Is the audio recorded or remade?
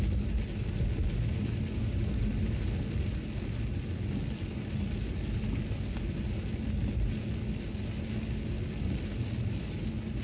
recorded